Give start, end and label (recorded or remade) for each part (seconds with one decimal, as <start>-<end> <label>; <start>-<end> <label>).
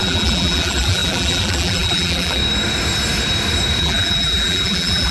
0.0-2.4 remade; 2.4-3.8 recorded; 3.8-5.1 remade